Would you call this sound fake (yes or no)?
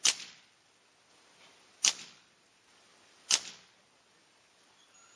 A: yes